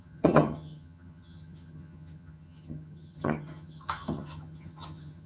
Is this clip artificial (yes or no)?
yes